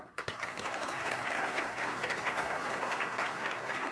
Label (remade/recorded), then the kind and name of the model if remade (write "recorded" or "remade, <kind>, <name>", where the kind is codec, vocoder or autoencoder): remade, codec, SNAC